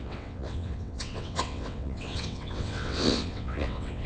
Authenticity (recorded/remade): remade